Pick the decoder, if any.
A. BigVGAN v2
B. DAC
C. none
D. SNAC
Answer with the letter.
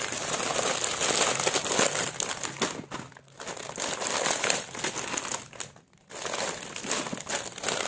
C